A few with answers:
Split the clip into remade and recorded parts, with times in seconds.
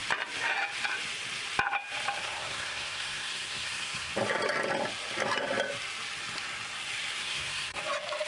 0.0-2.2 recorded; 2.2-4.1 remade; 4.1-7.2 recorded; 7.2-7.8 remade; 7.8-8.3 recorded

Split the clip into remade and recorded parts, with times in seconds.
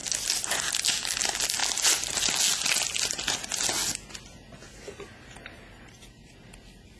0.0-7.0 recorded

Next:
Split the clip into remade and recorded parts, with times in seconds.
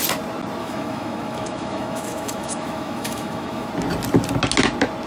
0.0-0.6 recorded; 0.6-3.7 remade; 3.7-5.1 recorded